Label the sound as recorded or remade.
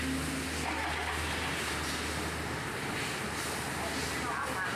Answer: recorded